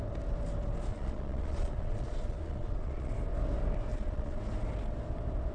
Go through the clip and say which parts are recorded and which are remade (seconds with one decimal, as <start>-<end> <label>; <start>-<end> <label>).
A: 0.0-0.9 recorded; 0.9-3.1 remade; 3.1-3.9 recorded; 3.9-4.4 remade; 4.4-5.5 recorded